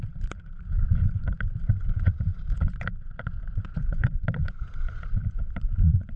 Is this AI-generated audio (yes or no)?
yes